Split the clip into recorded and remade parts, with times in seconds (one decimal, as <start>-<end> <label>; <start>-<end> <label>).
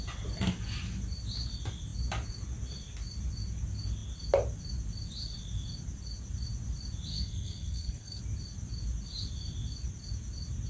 0.0-7.1 recorded; 7.1-8.2 remade; 8.2-10.7 recorded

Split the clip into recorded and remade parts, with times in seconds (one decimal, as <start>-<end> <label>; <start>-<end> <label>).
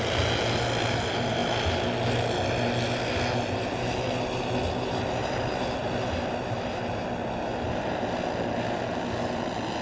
0.0-9.8 recorded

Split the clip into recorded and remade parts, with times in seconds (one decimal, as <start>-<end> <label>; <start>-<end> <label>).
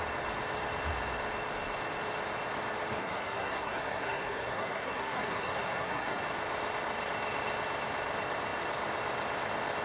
0.0-3.0 recorded; 3.0-6.2 remade; 6.2-9.8 recorded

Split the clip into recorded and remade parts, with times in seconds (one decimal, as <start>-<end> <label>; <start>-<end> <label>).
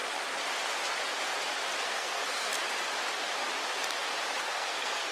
0.0-1.8 recorded; 1.8-2.5 remade; 2.5-4.4 recorded; 4.4-5.1 remade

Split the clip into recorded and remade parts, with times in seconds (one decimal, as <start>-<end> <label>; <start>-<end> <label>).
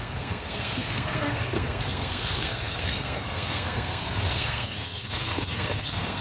0.0-6.2 remade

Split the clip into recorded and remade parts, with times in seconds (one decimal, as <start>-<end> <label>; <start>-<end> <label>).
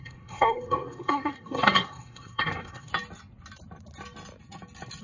0.0-2.9 remade; 2.9-5.0 recorded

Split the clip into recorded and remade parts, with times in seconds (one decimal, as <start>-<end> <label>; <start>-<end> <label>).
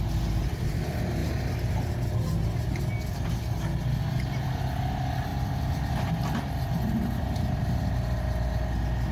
0.0-9.1 recorded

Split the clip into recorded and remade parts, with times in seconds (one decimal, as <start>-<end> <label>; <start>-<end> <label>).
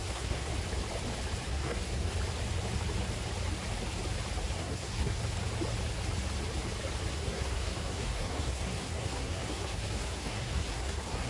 0.0-0.5 remade; 0.5-1.5 recorded; 1.5-2.1 remade; 2.1-4.6 recorded; 4.6-5.2 remade; 5.2-7.1 recorded; 7.1-11.3 remade